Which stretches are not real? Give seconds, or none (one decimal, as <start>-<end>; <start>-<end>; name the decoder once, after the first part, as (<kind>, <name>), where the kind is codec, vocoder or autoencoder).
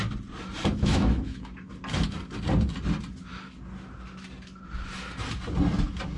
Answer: 0.7-1.7 (autoencoder, DAC-VAE)